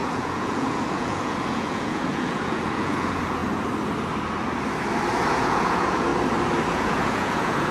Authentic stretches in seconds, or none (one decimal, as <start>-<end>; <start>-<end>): 3.4-5.3; 6.1-6.7